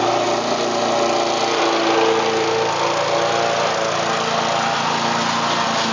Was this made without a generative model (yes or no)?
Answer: yes